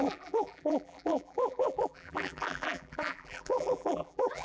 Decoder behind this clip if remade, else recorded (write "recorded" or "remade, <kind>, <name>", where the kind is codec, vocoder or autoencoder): remade, vocoder, BigVGAN v2